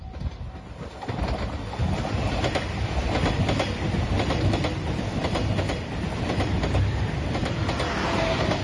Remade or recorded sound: recorded